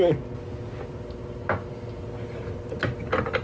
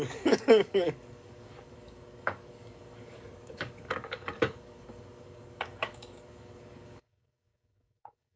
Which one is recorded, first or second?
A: first